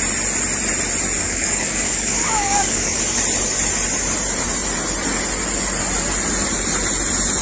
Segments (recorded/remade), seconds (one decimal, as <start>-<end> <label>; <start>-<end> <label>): 0.0-1.2 recorded; 1.2-3.0 remade; 3.0-7.4 recorded